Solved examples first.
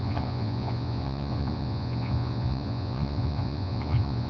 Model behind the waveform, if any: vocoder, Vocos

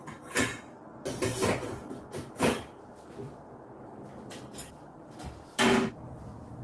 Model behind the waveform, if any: none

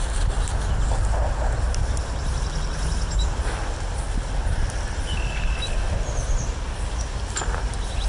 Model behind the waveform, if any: none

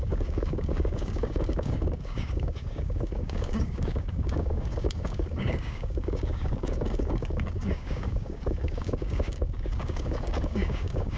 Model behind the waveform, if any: codec, DAC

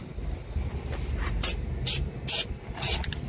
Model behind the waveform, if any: none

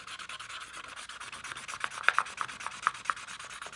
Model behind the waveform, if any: none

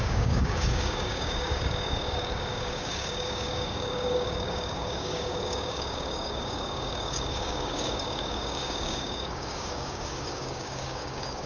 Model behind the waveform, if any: codec, DAC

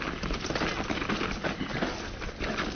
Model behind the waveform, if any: none